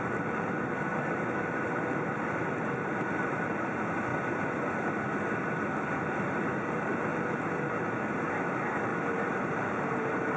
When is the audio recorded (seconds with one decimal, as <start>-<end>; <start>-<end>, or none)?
0.9-1.7; 4.1-6.6; 7.1-7.7